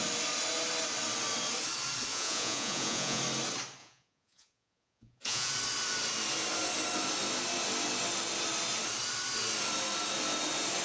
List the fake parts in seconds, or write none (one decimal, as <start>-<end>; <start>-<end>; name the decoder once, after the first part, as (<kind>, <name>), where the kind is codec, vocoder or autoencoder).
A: 2.1-3.2 (vocoder, Vocos); 3.8-5.5